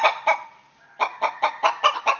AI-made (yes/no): no